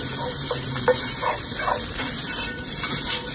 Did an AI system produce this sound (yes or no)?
yes